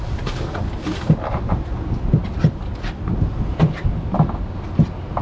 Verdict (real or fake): real